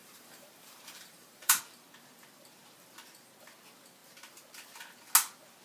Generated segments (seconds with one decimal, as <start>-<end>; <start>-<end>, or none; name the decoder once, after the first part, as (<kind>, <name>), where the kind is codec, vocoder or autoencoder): 0.0-1.6 (vocoder, BigVGAN v2)